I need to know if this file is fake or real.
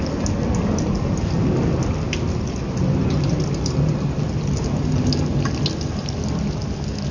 real